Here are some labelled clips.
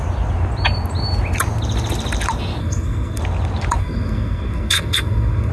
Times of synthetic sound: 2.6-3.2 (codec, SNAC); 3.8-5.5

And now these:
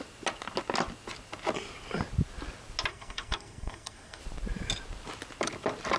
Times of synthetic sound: 2.9-4.2 (codec, SNAC)

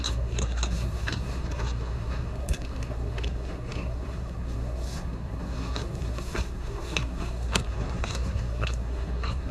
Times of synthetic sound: 0.0-9.5 (codec, SNAC)

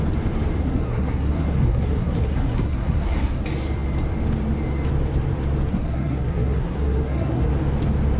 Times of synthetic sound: 0.6-3.4 (codec, SNAC); 5.7-7.5

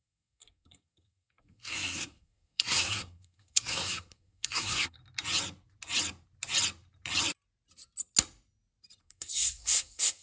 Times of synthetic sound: 0.0-5.0 (codec, SNAC); 9.0-10.2

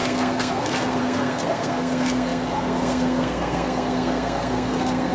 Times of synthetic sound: 0.0-5.1 (codec, SNAC)